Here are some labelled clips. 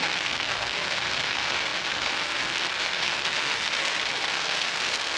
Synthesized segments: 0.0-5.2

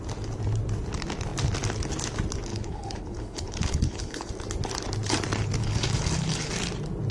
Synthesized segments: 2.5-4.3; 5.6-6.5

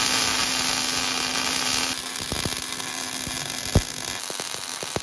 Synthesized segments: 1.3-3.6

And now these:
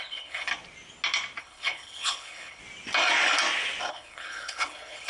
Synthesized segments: 0.0-0.5; 1.4-2.6; 3.9-5.1